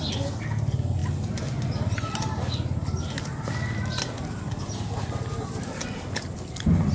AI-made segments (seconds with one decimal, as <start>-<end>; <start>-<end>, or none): none